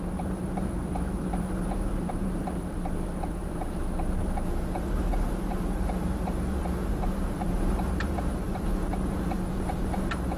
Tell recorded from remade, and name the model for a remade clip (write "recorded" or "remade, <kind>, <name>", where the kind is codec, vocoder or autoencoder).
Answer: remade, vocoder, BigVGAN v2